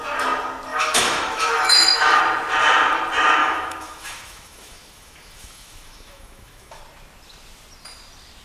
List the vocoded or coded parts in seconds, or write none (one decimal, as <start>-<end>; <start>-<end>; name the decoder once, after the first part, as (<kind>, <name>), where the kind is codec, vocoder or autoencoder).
0.7-2.2 (autoencoder, DAC-VAE); 3.4-6.8